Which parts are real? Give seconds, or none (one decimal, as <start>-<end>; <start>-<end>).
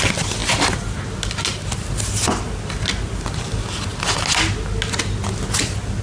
0.0-6.0